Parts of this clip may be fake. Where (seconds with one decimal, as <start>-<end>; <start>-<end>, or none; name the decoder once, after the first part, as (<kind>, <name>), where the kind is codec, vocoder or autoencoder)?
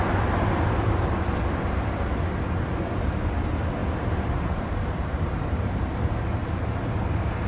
3.8-5.2 (vocoder, BigVGAN v2); 6.4-6.9